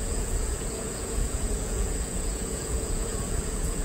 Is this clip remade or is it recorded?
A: remade